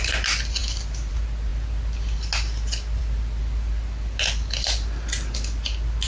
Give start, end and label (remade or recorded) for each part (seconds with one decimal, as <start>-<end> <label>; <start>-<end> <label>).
0.0-6.1 recorded